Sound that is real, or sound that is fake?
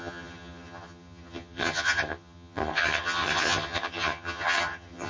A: fake